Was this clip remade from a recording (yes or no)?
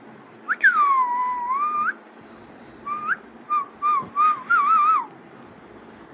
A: no